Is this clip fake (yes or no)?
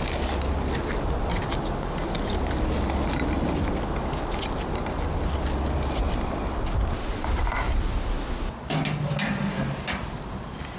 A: no